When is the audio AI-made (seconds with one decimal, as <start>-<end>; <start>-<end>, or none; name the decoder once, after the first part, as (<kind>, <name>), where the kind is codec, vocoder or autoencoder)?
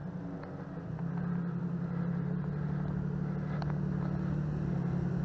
none